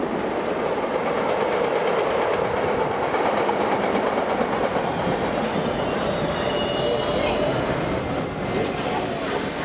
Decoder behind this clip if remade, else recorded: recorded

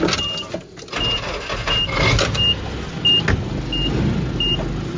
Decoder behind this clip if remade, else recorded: recorded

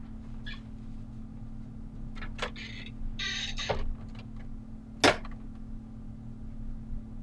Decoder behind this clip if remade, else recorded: recorded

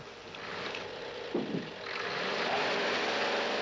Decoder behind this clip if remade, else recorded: recorded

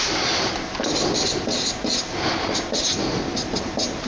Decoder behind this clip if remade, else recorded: recorded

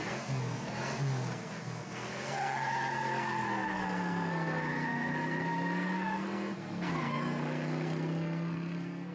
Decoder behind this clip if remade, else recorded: remade, codec, SNAC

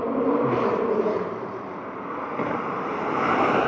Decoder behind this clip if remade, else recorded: remade, vocoder, BigVGAN v2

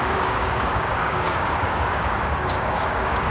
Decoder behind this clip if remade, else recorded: remade, codec, DAC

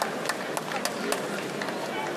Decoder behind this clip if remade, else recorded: recorded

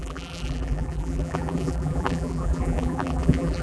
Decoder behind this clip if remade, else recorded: remade, vocoder, BigVGAN v2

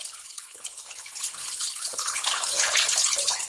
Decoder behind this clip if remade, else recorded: remade, codec, HILCodec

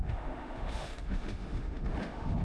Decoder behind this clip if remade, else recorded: remade, autoencoder, DAC-VAE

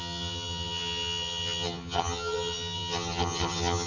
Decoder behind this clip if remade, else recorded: remade, vocoder, HiFi-GAN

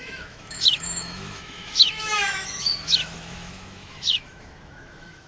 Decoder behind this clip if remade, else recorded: remade, autoencoder, DAC-VAE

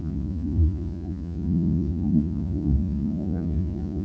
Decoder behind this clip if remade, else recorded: remade, vocoder, Vocos